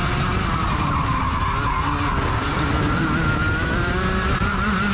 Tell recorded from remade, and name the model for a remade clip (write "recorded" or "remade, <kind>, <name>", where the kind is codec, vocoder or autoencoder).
recorded